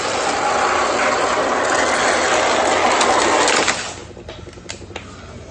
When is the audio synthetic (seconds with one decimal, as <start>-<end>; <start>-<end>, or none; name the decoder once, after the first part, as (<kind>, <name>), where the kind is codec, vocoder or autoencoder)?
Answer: none